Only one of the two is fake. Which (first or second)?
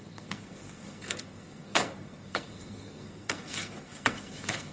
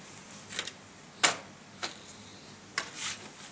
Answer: first